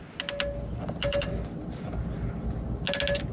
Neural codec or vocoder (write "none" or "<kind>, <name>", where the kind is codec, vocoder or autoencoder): none